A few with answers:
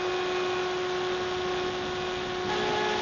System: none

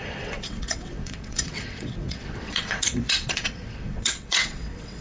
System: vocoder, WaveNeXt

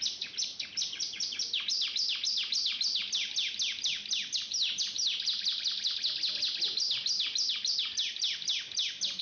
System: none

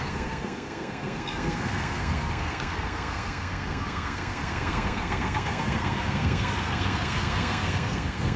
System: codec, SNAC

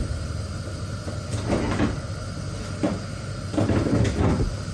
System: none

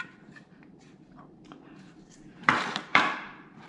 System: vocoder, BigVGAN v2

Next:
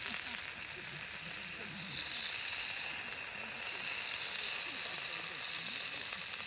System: none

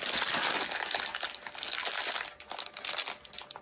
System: none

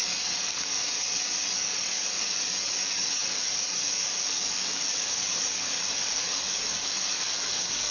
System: codec, DAC